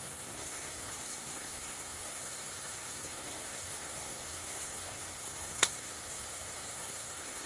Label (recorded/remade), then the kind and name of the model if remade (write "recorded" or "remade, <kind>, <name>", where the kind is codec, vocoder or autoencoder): remade, codec, SNAC